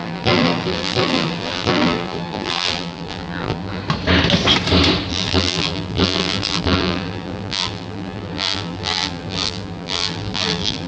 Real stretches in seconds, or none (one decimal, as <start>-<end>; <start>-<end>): 3.8-5.1

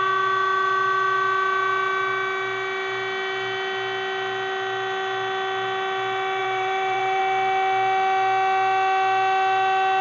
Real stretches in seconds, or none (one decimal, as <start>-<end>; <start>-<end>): 0.0-6.4; 7.2-10.0

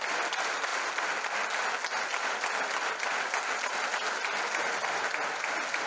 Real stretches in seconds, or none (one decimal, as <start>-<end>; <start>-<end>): 0.0-5.9

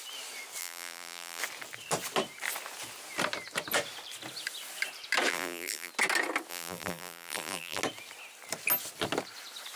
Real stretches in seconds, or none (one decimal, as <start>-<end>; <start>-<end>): 0.0-0.6; 1.4-5.3; 5.9-6.5; 7.8-9.8

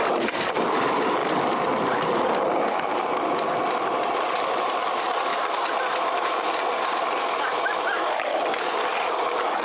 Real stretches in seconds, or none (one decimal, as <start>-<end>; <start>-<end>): 0.0-1.2; 2.1-9.6